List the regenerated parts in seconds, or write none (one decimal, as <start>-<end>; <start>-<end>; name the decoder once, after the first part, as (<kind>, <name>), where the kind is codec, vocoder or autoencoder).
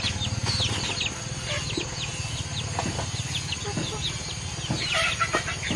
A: none